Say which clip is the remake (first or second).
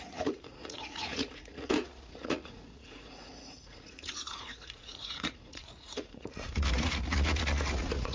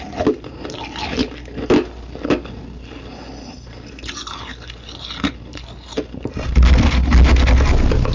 first